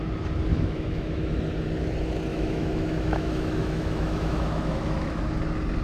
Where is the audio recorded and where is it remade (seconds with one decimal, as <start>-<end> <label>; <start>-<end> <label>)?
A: 0.0-0.5 recorded; 0.5-1.4 remade; 1.4-2.3 recorded; 2.3-5.2 remade; 5.2-5.8 recorded